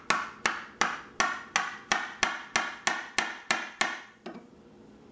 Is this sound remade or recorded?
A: recorded